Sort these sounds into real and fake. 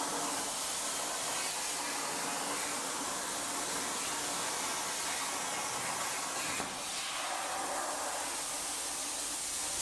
real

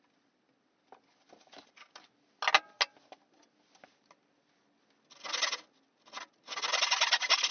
real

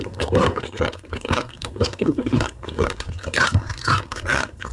fake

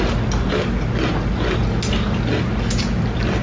real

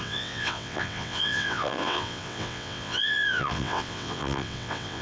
fake